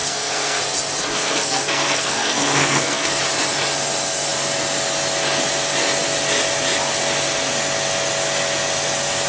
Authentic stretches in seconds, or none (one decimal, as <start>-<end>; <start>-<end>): 0.6-1.1; 3.2-9.3